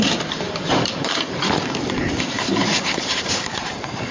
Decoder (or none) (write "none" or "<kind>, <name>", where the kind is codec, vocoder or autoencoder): vocoder, BigVGAN v2